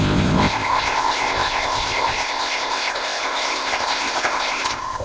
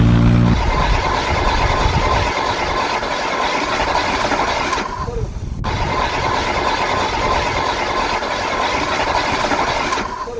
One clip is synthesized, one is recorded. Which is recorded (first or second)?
second